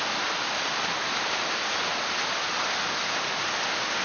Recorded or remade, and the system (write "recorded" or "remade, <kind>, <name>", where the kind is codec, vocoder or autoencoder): recorded